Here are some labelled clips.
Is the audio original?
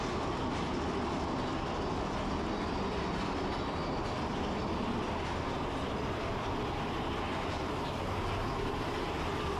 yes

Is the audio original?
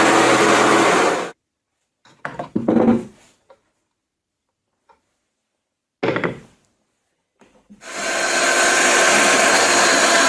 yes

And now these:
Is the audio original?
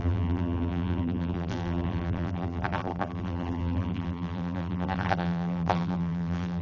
no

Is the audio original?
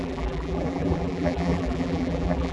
no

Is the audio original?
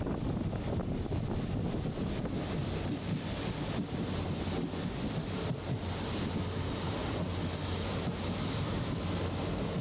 yes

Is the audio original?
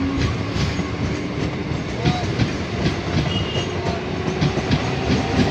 yes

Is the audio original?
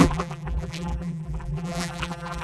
no